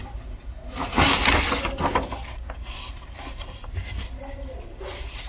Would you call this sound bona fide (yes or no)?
yes